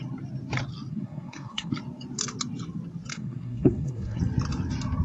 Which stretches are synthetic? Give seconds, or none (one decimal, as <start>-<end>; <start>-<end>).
0.9-1.7; 3.1-4.2